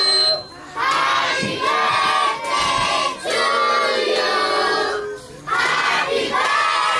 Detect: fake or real real